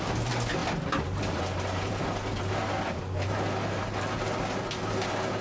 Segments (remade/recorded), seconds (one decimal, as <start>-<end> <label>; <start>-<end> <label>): 0.0-5.4 recorded